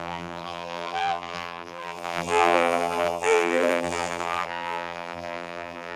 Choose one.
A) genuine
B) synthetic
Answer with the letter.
B